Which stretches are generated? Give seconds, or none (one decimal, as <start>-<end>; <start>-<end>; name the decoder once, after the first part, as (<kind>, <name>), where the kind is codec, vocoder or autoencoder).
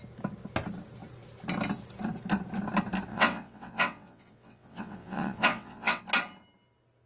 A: 3.1-6.0 (vocoder, WaveNeXt)